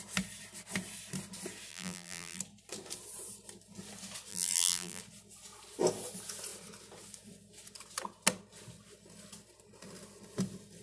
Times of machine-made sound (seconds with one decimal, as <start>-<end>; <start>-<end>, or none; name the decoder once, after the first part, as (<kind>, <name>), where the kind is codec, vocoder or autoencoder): 1.7-2.4 (vocoder, BigVGAN v2); 4.3-5.0